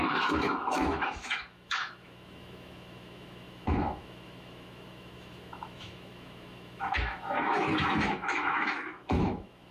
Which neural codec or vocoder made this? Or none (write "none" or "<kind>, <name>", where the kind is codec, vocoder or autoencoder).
autoencoder, DAC-VAE